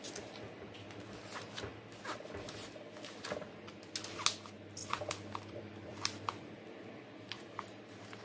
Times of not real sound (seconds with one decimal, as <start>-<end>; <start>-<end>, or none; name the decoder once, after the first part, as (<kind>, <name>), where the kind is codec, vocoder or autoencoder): 4.8-8.2 (vocoder, BigVGAN v2)